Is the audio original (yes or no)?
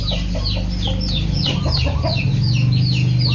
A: yes